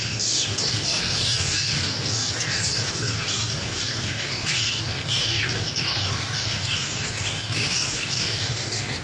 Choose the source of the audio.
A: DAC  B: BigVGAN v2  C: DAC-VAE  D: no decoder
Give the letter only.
A